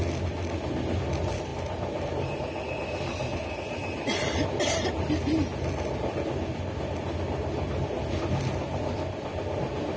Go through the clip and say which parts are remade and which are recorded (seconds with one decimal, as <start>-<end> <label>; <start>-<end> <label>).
0.0-10.0 recorded